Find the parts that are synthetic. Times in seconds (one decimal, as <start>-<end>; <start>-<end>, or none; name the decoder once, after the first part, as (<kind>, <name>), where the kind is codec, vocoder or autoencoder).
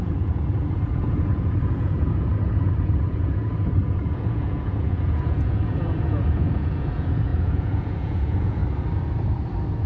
0.0-8.6 (vocoder, Vocos)